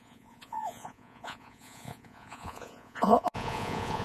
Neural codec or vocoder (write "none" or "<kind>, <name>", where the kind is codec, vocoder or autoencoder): vocoder, Vocos